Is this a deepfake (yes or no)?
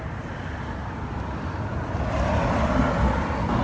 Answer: no